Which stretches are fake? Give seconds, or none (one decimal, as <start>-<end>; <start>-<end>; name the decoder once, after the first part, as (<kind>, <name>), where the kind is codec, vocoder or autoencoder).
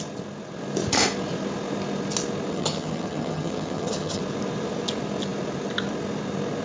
2.5-4.2 (vocoder, HiFi-GAN)